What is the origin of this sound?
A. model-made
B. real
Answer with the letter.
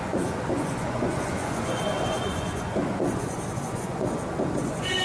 A